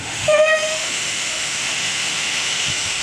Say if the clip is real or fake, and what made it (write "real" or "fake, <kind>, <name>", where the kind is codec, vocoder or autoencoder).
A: fake, autoencoder, DAC-VAE